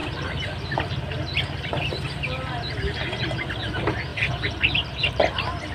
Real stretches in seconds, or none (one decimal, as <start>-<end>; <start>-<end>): 0.0-5.7